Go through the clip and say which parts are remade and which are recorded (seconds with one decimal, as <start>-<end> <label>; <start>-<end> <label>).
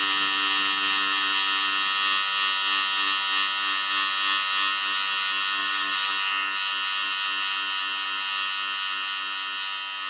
0.0-5.6 recorded; 5.6-6.1 remade; 6.1-10.1 recorded